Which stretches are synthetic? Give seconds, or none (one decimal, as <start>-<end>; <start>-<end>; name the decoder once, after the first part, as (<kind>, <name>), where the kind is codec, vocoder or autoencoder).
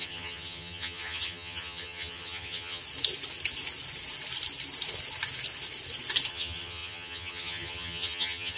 0.0-2.8 (vocoder, HiFi-GAN); 6.3-8.6